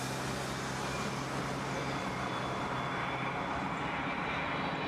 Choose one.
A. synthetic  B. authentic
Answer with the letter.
B